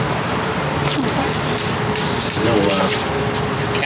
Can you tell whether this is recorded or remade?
remade